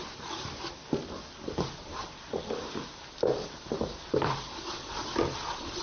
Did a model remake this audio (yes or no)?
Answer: yes